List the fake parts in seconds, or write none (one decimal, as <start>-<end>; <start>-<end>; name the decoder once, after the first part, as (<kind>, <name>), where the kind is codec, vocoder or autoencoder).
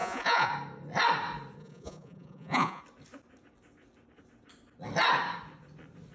0.0-0.5 (vocoder, Vocos); 1.6-2.8